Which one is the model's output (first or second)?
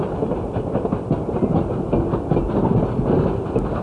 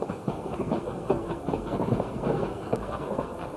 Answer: second